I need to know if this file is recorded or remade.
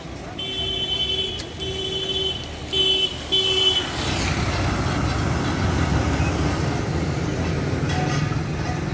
recorded